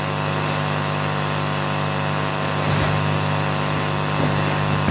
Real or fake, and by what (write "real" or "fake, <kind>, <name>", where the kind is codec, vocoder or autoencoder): real